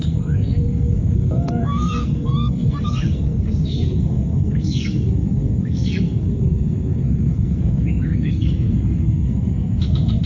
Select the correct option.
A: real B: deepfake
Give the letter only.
B